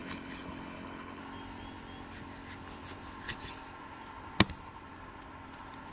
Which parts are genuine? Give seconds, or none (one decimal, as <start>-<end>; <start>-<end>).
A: 1.2-5.9